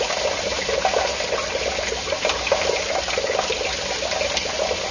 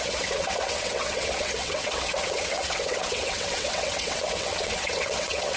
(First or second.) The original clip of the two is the first